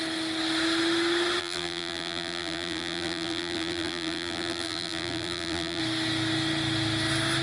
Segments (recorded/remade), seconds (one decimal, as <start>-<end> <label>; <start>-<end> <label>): 0.0-1.4 recorded; 1.4-5.8 remade; 5.8-7.4 recorded